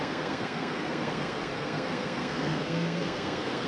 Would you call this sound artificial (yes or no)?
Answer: yes